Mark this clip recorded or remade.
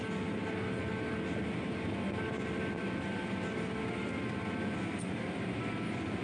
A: recorded